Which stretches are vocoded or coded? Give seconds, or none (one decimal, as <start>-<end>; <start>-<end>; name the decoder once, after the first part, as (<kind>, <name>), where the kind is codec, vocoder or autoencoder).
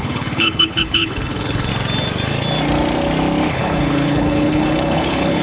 0.0-1.7 (codec, HILCodec); 3.5-5.4